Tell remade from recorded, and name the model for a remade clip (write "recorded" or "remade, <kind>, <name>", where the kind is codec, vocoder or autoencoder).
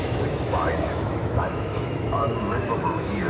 remade, autoencoder, DAC-VAE